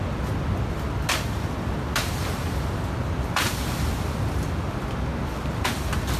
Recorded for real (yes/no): yes